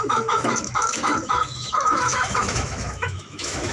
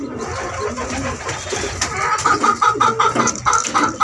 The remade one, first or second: first